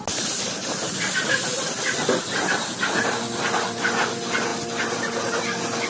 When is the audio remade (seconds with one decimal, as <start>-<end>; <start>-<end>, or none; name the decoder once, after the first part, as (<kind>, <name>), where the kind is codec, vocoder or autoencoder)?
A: none